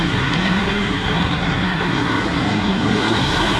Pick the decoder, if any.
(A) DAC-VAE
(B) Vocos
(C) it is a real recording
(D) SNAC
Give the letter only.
D